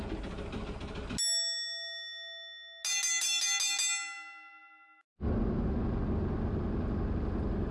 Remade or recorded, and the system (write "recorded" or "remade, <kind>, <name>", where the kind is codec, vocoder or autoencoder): recorded